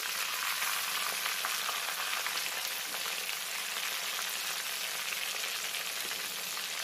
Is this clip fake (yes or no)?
no